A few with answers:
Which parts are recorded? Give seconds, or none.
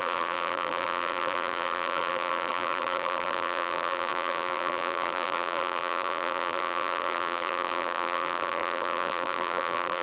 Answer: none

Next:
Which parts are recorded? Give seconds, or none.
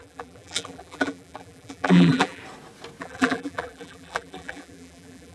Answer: 2.4-3.0